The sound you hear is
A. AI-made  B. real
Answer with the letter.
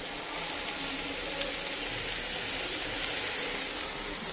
B